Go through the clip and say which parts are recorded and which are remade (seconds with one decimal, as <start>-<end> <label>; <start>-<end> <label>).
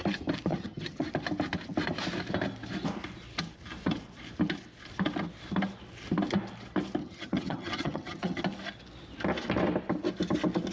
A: 0.0-0.5 recorded; 0.5-1.1 remade; 1.1-7.0 recorded; 7.0-8.4 remade; 8.4-10.7 recorded